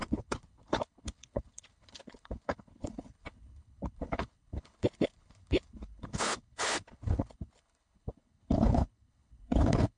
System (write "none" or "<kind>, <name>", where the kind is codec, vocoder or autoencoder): codec, HILCodec